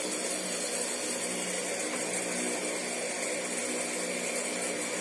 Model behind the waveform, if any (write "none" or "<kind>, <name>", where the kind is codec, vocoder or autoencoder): none